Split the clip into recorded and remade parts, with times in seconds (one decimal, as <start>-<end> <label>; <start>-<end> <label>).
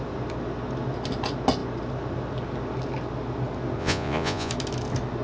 0.0-3.8 recorded; 3.8-4.5 remade; 4.5-5.2 recorded